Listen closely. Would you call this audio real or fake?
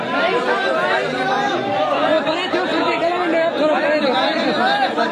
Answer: real